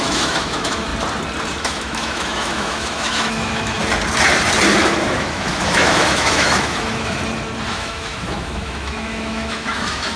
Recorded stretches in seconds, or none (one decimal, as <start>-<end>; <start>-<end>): 0.9-1.6; 3.8-4.8; 7.2-7.7